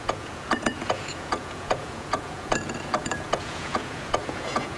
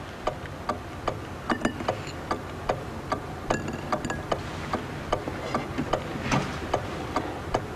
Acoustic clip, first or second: second